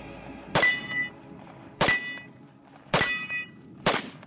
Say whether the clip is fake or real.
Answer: real